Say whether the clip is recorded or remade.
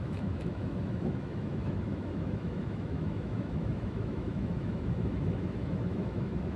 remade